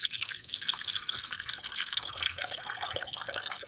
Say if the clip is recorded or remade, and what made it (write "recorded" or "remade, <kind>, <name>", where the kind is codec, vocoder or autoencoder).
remade, codec, SNAC